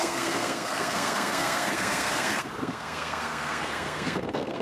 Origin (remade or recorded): remade